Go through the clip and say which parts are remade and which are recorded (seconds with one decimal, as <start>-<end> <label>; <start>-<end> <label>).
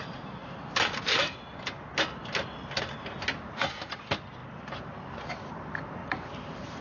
0.0-0.4 recorded; 0.4-1.3 remade; 1.3-4.4 recorded; 4.4-5.0 remade; 5.0-6.0 recorded; 6.0-6.8 remade